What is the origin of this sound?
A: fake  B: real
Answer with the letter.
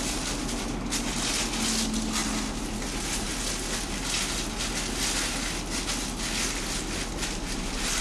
B